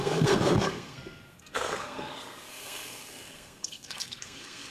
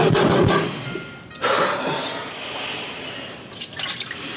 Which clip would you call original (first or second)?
second